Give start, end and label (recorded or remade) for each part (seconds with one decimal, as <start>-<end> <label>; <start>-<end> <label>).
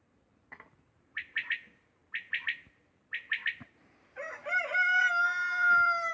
0.0-6.1 remade